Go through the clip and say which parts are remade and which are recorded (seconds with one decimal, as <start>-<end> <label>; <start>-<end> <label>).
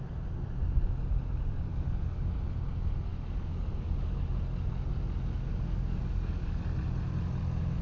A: 0.0-1.7 recorded; 1.7-2.3 remade; 2.3-3.1 recorded; 3.1-4.2 remade; 4.2-5.5 recorded; 5.5-6.6 remade; 6.6-7.8 recorded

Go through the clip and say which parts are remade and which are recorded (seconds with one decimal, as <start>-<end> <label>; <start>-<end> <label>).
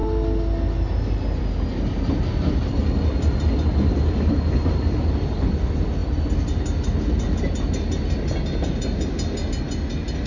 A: 0.0-10.3 recorded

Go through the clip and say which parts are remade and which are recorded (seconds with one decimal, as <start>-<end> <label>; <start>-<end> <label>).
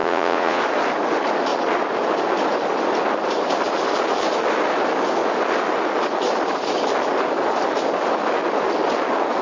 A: 0.0-0.6 remade; 0.6-9.4 recorded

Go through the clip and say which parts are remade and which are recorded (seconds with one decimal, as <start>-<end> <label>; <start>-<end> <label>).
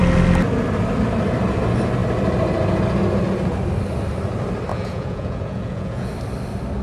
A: 0.0-4.7 recorded; 4.7-6.1 remade; 6.1-6.8 recorded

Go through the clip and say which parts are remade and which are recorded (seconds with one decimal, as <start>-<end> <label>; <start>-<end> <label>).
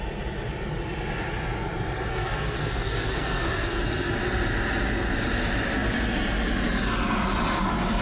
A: 0.0-2.1 recorded; 2.1-3.8 remade; 3.8-8.0 recorded